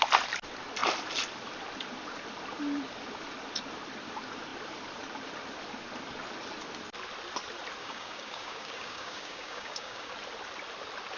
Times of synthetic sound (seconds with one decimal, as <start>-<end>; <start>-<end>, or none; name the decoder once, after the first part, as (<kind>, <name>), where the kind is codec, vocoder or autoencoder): 7.8-10.1 (codec, DAC)